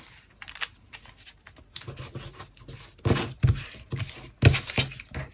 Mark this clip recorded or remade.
recorded